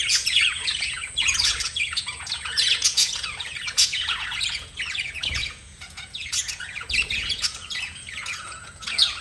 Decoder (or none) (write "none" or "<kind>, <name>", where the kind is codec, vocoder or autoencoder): vocoder, Vocos